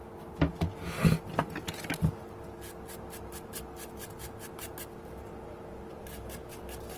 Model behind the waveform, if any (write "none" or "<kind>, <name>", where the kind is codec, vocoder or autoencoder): none